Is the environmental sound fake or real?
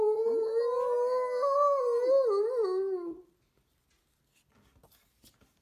real